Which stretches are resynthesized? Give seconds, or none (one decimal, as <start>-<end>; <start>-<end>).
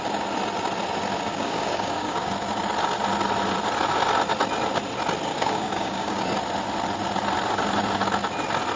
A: 1.3-2.3; 5.3-6.2